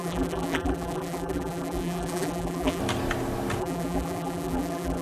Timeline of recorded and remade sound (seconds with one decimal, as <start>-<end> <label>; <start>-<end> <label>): 0.0-2.8 remade; 2.8-3.6 recorded; 3.6-5.0 remade